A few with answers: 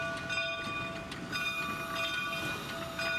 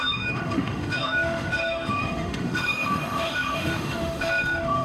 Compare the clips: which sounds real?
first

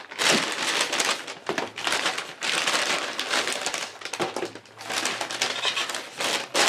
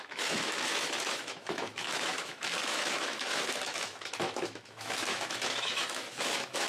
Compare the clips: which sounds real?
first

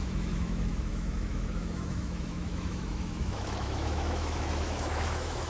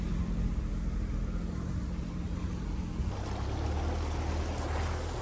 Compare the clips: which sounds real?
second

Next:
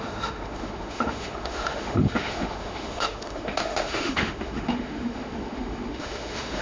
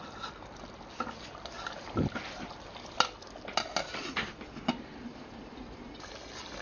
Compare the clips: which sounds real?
second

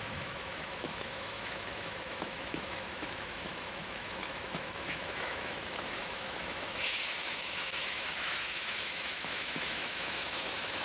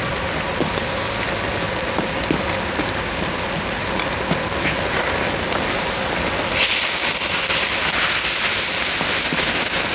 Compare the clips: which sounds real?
second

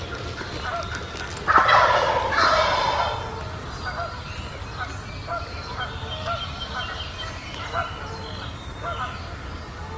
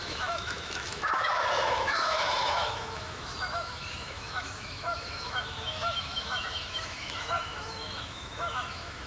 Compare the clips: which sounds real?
first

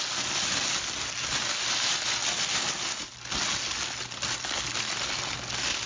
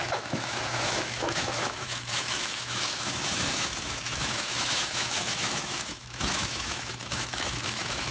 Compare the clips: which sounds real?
first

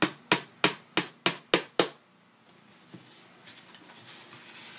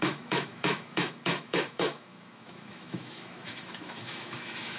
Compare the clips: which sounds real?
first